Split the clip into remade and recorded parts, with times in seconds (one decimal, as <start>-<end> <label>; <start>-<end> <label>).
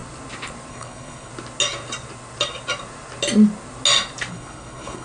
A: 0.0-0.7 recorded; 0.7-1.3 remade; 1.3-4.3 recorded; 4.3-5.0 remade